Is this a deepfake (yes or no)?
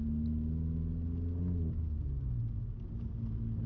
no